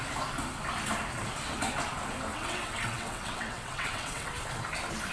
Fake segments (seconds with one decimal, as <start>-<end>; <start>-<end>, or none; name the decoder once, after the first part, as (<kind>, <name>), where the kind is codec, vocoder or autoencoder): 2.3-4.3 (vocoder, WaveNeXt)